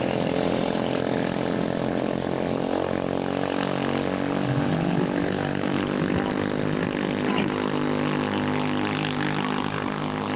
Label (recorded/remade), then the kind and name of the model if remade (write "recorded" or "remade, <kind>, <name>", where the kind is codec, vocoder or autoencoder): recorded